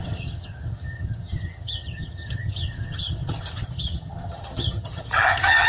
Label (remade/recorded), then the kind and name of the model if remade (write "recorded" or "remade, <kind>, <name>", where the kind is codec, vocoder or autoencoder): remade, vocoder, HiFi-GAN